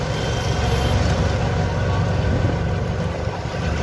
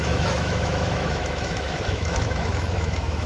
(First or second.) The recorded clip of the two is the first